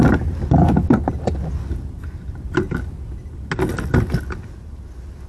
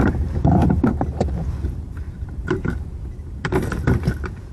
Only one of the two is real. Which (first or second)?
first